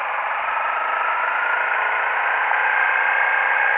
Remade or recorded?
recorded